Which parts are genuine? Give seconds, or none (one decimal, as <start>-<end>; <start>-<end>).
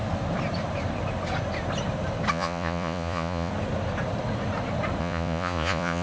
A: 0.0-2.3; 3.5-5.0